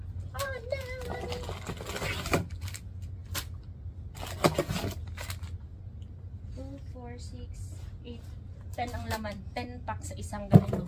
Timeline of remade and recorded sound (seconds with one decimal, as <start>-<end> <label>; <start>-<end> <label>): 0.0-8.9 recorded; 8.9-9.4 remade; 9.4-10.9 recorded